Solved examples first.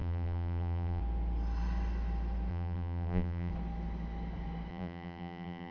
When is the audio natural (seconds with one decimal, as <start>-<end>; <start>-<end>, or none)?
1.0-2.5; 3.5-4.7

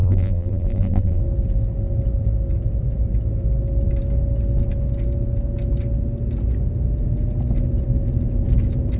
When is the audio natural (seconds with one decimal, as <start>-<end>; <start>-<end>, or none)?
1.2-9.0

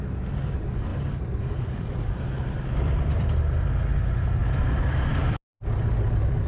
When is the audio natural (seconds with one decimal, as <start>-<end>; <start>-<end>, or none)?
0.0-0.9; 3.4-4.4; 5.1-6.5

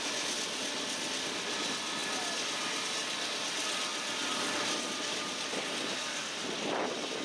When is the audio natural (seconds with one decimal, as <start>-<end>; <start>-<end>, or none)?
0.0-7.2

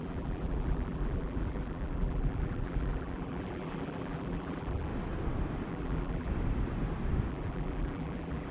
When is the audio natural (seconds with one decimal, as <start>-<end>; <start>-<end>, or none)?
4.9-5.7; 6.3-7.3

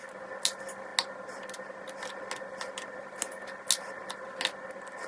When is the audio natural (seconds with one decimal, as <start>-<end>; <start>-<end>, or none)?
0.0-5.1